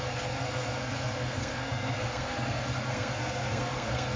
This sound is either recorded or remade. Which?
remade